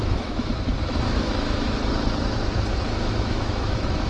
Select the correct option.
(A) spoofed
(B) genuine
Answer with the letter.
A